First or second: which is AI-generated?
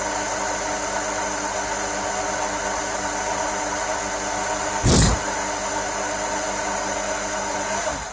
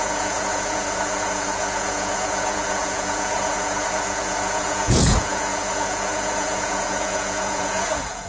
second